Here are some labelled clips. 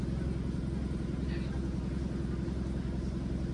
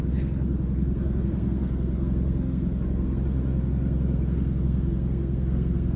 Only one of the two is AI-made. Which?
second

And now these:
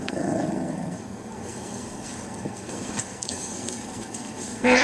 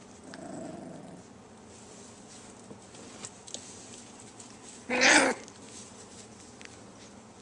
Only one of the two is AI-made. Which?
first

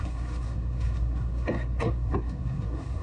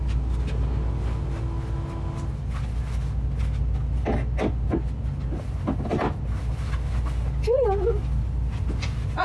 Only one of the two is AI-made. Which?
first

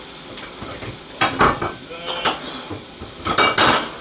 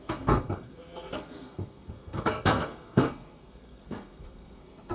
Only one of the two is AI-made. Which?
second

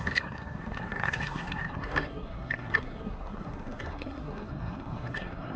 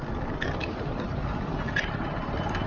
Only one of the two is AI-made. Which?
first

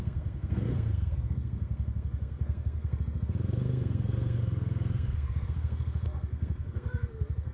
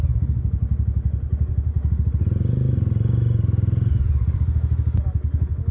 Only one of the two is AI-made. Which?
first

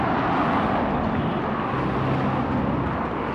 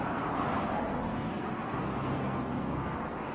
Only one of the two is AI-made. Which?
second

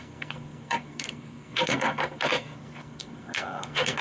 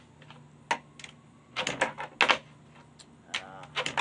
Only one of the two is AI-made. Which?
first